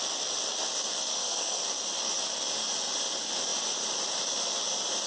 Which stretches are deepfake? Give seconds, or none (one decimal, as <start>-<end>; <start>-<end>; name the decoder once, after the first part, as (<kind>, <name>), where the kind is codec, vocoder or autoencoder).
1.1-1.6 (codec, SNAC)